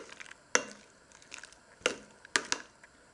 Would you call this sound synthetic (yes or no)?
no